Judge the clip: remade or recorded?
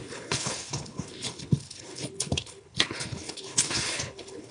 remade